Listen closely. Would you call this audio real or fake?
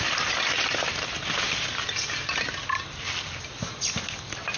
real